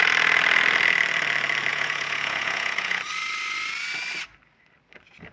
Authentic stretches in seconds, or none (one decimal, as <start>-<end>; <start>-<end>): 0.0-1.7; 3.0-5.3